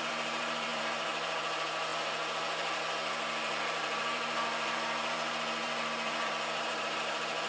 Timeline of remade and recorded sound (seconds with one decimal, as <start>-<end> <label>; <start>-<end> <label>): 0.0-7.5 remade

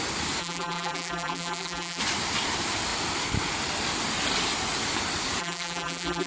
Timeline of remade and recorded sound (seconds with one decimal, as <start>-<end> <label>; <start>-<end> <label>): 0.0-0.4 recorded; 0.4-2.0 remade; 2.0-5.4 recorded; 5.4-6.3 remade

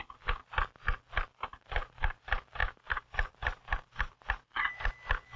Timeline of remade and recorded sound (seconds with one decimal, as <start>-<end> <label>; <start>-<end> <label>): 0.0-1.5 recorded; 1.5-2.2 remade; 2.2-2.6 recorded; 2.6-4.9 remade; 4.9-5.4 recorded